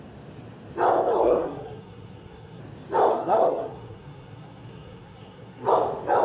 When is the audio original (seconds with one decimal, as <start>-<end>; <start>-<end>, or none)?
0.0-1.1; 2.6-3.1; 5.7-6.2

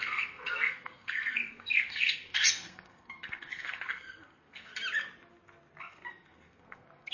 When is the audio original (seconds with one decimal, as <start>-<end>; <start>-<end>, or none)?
4.7-5.8